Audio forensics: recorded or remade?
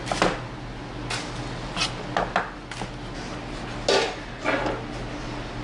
recorded